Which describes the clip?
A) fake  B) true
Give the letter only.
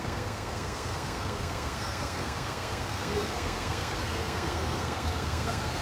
A